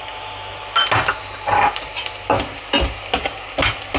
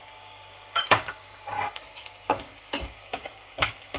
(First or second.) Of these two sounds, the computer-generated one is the second